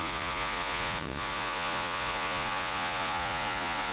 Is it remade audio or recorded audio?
remade